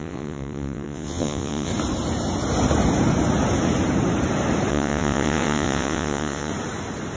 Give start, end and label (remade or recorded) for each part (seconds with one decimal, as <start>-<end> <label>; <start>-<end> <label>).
0.0-1.7 remade; 1.7-4.7 recorded; 4.7-6.5 remade; 6.5-7.2 recorded